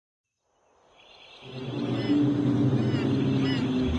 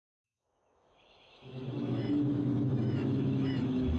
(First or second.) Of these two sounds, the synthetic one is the second